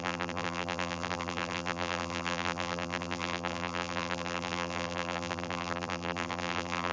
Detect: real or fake fake